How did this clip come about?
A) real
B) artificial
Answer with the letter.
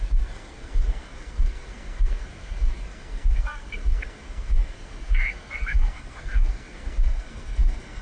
B